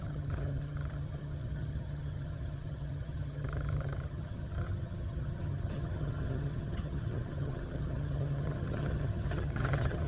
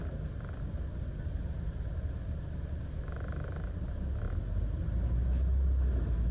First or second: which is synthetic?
first